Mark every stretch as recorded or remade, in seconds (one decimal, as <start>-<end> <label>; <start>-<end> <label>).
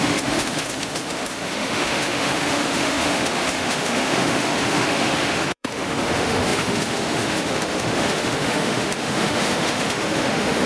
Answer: 0.0-10.7 remade